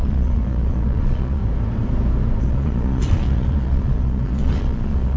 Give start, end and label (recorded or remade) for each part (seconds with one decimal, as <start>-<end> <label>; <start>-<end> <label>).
0.0-1.4 remade; 1.4-2.4 recorded; 2.4-5.2 remade